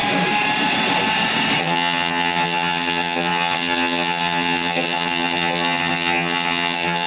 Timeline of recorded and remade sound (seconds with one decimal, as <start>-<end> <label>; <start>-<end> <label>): 0.0-1.6 recorded; 1.6-7.1 remade